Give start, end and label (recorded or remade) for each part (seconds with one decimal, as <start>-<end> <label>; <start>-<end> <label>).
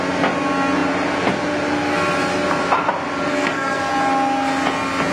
0.0-3.3 recorded; 3.3-3.9 remade; 3.9-5.1 recorded